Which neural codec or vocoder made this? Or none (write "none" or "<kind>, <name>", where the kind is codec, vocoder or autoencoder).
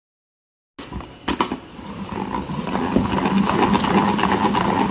none